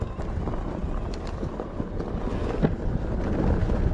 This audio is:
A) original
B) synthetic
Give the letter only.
A